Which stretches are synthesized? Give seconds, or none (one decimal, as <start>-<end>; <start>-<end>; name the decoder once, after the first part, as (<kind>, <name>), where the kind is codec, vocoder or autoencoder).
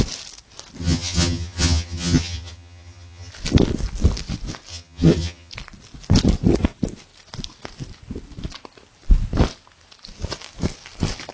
0.8-3.3 (vocoder, HiFi-GAN); 4.7-5.5